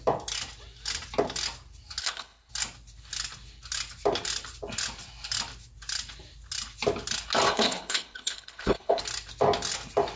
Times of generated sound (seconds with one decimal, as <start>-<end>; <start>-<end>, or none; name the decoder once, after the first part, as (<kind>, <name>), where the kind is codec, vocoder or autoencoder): 2.0-2.5 (codec, HILCodec); 7.5-9.0